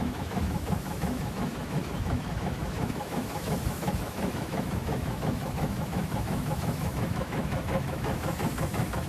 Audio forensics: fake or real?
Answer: fake